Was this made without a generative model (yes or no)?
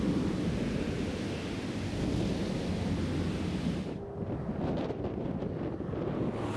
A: yes